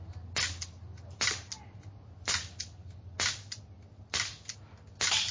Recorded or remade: recorded